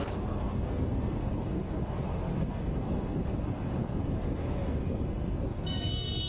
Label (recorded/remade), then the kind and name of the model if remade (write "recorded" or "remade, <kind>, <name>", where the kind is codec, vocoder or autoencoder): remade, codec, SNAC